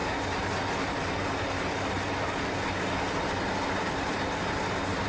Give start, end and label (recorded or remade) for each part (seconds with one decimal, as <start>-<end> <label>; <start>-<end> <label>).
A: 0.0-5.1 recorded